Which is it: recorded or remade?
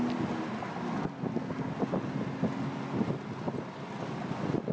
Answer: recorded